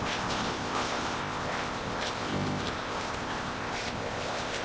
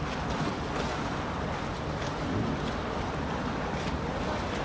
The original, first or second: second